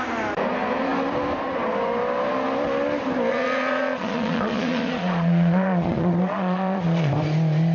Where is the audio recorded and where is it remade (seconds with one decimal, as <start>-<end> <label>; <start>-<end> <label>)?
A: 0.0-3.3 recorded; 3.3-7.1 remade; 7.1-7.7 recorded